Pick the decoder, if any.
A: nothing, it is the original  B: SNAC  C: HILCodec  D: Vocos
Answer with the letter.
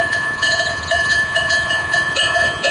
D